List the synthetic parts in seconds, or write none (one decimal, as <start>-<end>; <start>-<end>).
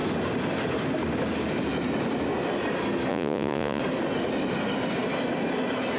3.1-3.8